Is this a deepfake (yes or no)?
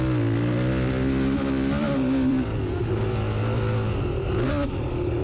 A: no